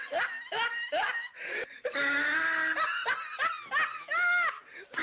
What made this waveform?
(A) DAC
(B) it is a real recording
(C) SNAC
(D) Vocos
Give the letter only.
B